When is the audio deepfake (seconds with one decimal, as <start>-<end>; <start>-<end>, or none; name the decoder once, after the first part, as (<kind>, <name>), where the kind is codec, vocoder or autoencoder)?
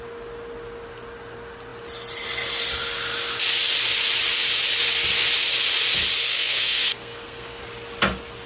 6.2-7.6 (codec, SNAC)